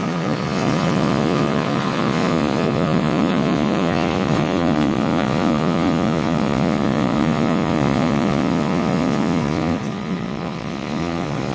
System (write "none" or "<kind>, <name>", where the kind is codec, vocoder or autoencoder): vocoder, Vocos